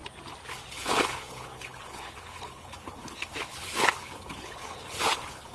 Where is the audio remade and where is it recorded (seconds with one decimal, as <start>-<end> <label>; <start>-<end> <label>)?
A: 0.0-0.7 recorded; 0.7-5.5 remade